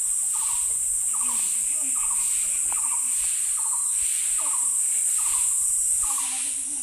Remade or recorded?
recorded